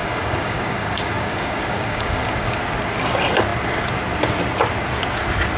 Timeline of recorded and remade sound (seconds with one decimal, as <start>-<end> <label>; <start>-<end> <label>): 0.0-2.6 remade; 2.6-5.6 recorded